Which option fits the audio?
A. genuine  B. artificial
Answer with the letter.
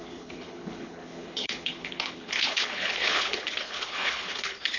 B